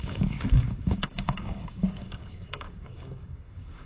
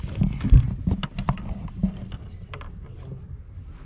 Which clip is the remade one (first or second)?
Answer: first